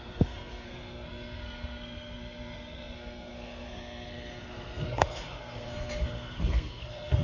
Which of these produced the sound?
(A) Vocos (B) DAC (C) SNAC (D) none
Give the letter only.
C